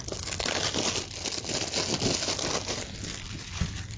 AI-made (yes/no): no